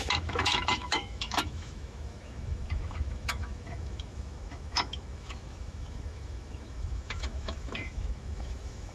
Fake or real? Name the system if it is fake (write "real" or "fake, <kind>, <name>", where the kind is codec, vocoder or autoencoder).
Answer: fake, autoencoder, DAC-VAE